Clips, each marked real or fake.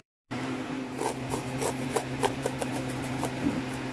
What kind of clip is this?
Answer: fake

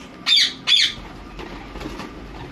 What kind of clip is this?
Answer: real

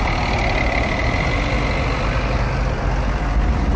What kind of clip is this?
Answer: real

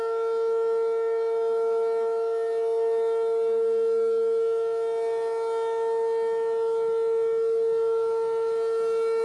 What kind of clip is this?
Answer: real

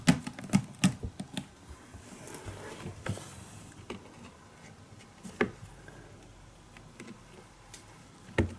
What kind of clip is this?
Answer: real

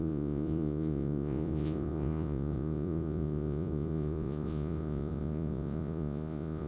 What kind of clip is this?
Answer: fake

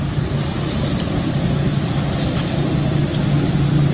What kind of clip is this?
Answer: real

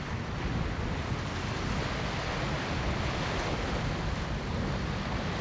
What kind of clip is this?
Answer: real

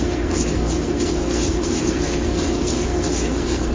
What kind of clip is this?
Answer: fake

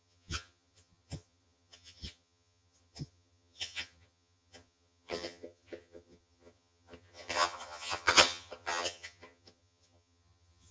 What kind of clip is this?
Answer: fake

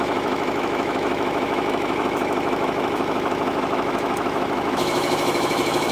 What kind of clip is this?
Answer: fake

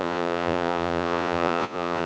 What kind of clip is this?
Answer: fake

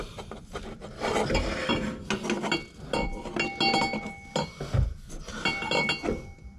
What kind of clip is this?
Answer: real